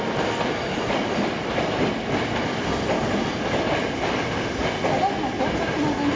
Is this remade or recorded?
recorded